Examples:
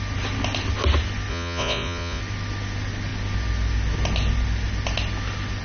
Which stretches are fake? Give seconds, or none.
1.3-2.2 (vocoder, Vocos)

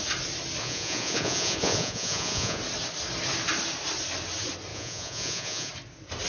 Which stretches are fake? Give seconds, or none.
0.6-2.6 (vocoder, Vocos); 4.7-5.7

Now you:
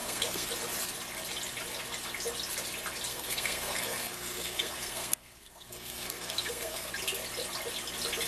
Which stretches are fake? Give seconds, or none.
0.0-0.5 (codec, SNAC); 3.1-6.9

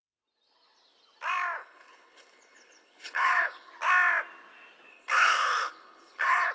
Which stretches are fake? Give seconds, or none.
1.6-3.7 (codec, HILCodec); 4.9-6.5

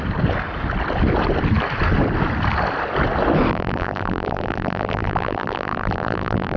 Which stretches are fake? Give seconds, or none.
3.5-6.6 (vocoder, BigVGAN v2)

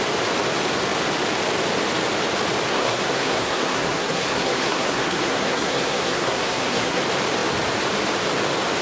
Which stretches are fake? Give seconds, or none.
2.7-7.0 (codec, SNAC)